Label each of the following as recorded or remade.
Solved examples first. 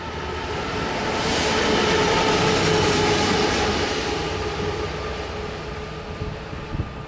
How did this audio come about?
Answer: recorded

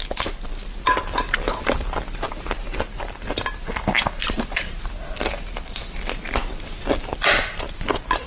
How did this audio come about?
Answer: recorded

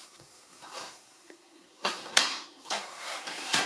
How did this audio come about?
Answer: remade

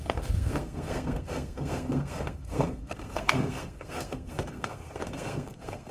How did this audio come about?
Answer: remade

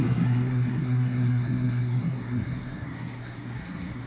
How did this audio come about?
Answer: remade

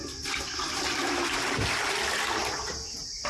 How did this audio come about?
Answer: recorded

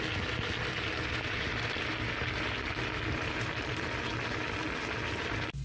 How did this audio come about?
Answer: recorded